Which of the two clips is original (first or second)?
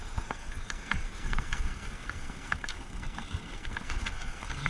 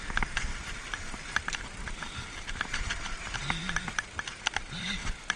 second